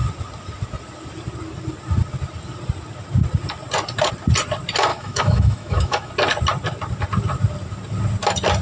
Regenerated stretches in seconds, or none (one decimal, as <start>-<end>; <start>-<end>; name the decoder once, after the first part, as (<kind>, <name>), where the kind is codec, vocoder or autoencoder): 4.9-6.1 (autoencoder, DAC-VAE)